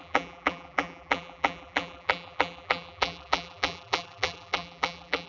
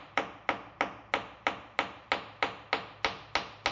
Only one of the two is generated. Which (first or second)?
first